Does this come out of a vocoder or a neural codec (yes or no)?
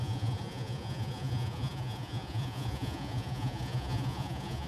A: yes